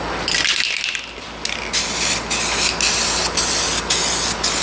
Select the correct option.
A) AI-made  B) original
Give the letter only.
B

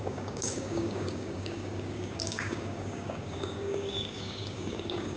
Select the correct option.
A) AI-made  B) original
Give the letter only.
A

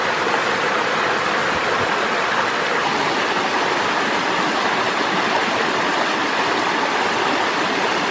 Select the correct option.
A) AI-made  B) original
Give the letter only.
B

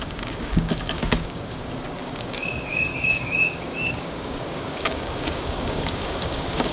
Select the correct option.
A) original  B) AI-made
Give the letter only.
B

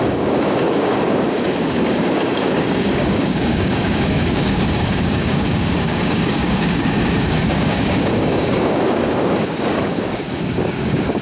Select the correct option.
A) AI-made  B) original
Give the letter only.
A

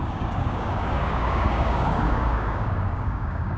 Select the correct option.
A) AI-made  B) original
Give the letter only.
A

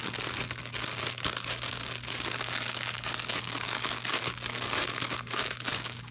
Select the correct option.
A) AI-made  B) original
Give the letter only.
A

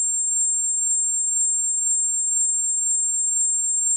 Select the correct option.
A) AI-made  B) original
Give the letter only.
A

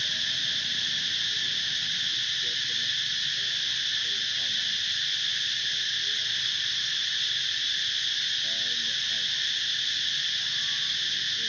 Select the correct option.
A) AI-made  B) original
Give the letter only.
B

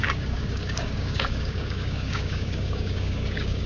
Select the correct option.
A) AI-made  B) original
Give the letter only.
A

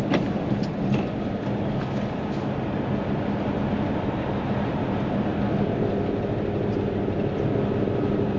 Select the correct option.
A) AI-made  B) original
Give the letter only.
B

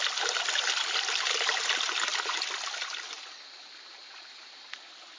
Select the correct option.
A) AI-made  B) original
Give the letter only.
B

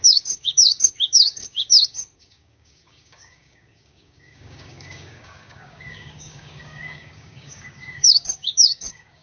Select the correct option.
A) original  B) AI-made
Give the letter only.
B